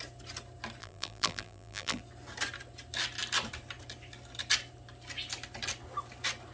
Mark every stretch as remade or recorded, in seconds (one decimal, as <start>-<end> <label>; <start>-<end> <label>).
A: 0.0-0.8 recorded; 0.8-2.0 remade; 2.0-6.5 recorded